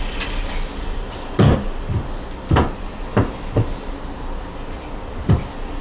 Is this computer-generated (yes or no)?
no